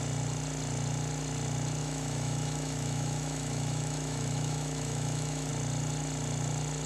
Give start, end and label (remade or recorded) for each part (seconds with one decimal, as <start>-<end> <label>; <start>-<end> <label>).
0.0-1.8 recorded; 1.8-5.5 remade; 5.5-6.9 recorded